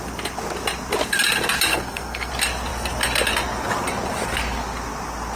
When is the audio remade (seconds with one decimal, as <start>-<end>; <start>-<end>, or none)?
1.7-2.3